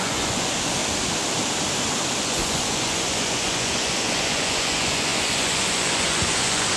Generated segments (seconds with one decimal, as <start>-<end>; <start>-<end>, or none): 0.0-0.8; 2.2-6.8